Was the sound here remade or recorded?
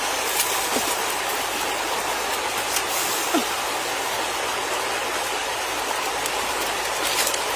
recorded